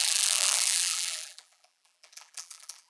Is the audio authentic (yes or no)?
no